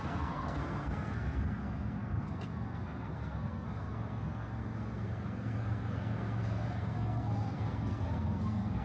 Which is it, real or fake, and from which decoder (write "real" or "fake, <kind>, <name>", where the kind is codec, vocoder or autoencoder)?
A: fake, codec, SNAC